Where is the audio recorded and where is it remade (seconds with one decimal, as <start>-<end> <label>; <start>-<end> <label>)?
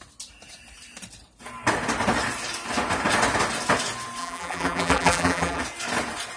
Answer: 0.0-4.2 recorded; 4.2-5.6 remade; 5.6-6.4 recorded